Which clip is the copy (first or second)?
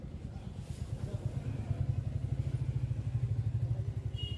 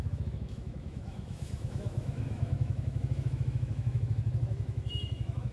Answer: second